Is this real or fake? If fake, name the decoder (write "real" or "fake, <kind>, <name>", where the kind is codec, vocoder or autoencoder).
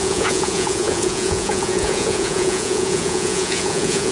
fake, vocoder, Vocos